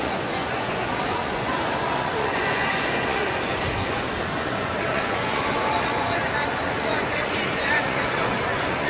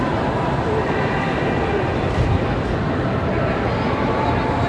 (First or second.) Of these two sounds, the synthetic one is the first